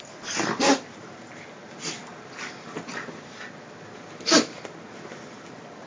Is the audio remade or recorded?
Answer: recorded